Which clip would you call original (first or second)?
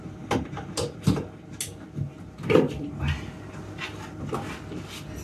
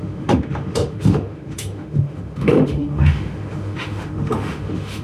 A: first